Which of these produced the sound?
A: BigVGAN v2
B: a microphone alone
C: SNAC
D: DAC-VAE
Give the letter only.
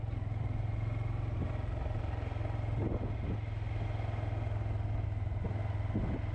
B